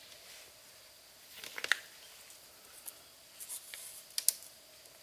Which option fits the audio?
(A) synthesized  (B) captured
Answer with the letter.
B